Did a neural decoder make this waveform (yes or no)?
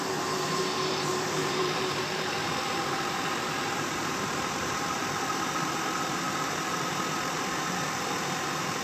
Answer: yes